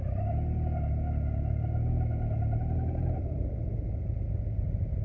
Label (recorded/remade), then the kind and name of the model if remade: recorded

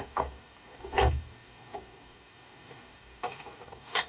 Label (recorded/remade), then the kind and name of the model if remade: remade, codec, DAC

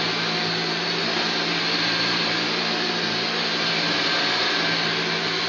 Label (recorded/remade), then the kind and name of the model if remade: recorded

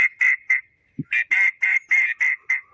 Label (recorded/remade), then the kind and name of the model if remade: recorded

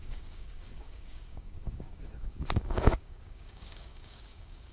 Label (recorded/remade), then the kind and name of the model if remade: remade, codec, DAC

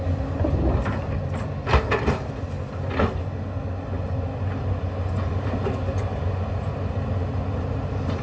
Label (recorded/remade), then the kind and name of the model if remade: recorded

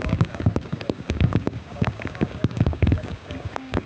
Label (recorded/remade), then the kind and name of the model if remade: remade, codec, DAC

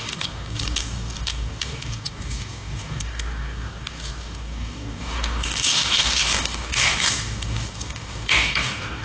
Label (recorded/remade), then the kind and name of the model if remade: remade, codec, DAC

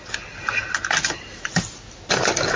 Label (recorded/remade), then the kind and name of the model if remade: recorded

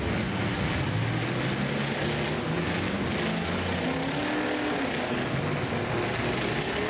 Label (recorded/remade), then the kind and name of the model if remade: recorded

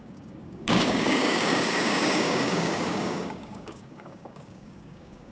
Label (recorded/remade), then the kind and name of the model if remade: remade, codec, DAC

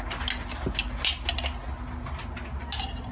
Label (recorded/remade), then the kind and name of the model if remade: recorded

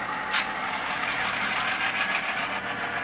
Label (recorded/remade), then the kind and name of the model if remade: recorded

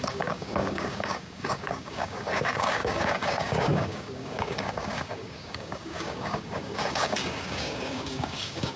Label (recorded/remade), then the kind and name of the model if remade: remade, codec, DAC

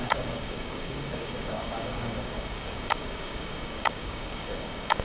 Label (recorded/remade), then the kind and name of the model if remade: remade, codec, DAC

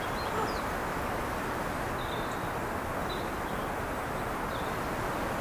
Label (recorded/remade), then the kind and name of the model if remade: recorded